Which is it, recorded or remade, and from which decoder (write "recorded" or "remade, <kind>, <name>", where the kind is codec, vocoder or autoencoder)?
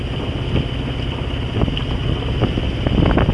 recorded